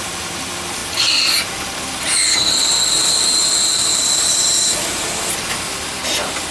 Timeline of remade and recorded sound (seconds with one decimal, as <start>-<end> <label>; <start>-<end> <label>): 0.0-0.8 remade; 0.8-4.7 recorded; 4.7-6.5 remade